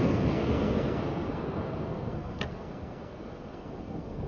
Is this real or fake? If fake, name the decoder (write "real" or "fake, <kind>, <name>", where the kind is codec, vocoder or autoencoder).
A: fake, codec, SNAC